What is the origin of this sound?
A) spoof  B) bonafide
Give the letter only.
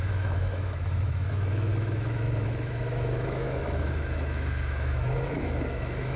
A